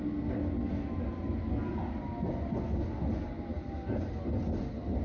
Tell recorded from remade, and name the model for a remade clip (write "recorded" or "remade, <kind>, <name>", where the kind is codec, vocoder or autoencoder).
recorded